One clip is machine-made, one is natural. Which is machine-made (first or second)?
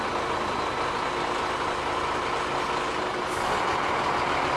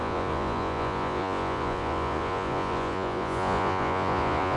second